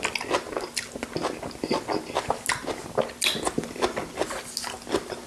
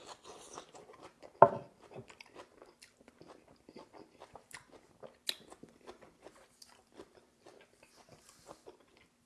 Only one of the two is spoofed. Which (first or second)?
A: second